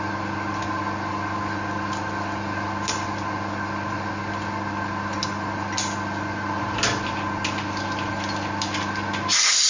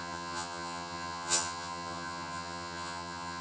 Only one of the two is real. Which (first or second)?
first